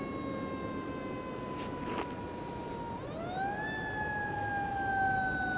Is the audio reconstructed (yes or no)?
no